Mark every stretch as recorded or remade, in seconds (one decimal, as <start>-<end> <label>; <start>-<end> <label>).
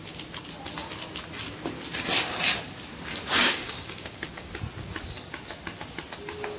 0.0-3.4 recorded; 3.4-4.5 remade; 4.5-6.6 recorded